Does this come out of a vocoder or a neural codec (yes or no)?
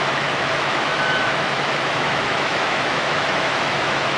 yes